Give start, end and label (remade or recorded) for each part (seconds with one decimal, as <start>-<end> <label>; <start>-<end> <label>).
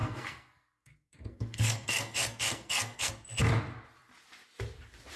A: 0.0-3.1 remade; 3.1-5.2 recorded